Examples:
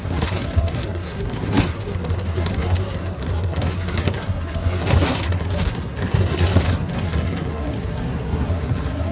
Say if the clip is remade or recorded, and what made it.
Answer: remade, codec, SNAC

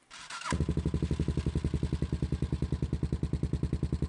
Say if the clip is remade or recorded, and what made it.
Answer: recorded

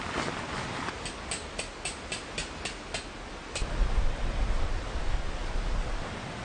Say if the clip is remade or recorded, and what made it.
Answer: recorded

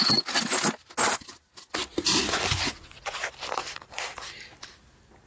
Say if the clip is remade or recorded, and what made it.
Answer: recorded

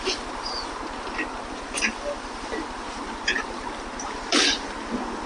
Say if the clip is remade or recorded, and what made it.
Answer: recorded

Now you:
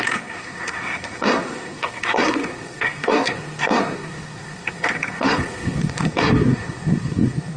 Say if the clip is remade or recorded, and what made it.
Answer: remade, codec, SNAC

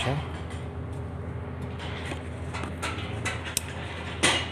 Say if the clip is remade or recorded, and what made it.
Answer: recorded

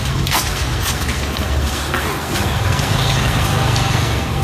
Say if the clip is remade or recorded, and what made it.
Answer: remade, codec, SNAC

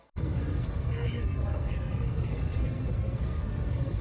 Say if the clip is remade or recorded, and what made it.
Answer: remade, codec, SNAC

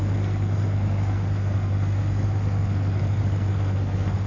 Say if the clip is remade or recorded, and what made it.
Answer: remade, codec, SNAC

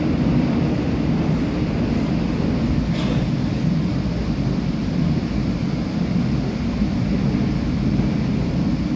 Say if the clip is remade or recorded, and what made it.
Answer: recorded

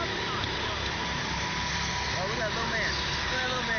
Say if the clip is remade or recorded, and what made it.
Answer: recorded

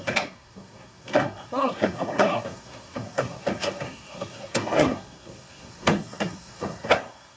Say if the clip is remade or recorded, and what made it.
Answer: remade, codec, SNAC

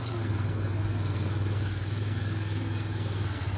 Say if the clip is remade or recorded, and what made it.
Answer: remade, codec, SNAC